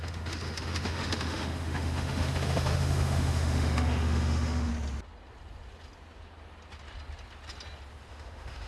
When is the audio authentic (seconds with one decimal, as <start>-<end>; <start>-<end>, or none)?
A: 4.7-8.1